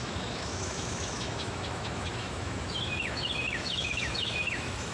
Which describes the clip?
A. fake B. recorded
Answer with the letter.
A